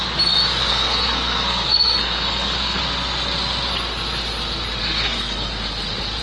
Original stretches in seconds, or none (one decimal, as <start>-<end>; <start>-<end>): 0.0-0.7; 2.8-4.8; 5.5-6.2